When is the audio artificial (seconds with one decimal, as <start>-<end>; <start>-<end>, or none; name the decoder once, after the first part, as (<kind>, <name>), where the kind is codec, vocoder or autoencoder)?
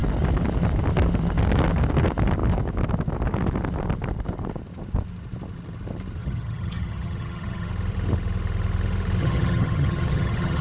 6.2-7.7 (vocoder, HiFi-GAN); 9.2-10.6